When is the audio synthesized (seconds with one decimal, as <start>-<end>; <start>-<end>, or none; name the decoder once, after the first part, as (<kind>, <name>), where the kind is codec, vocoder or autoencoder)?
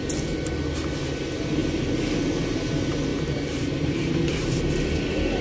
3.1-4.6 (vocoder, BigVGAN v2)